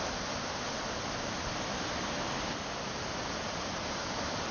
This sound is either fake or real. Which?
real